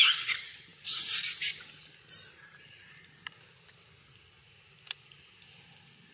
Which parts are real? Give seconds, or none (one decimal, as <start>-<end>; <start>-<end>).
0.0-6.1